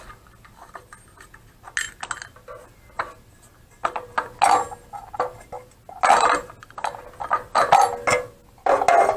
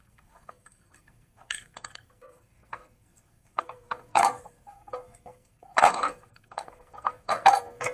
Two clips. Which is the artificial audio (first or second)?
second